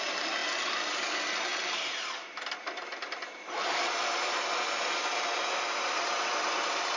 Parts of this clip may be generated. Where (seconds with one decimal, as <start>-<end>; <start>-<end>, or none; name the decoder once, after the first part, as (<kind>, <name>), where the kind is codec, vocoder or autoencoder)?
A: none